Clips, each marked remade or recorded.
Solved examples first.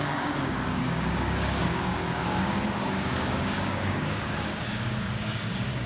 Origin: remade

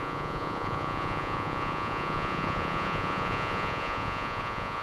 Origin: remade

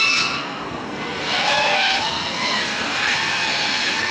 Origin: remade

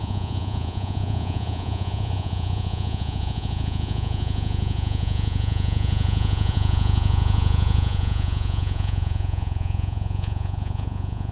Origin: remade